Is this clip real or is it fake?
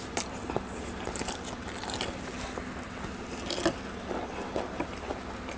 real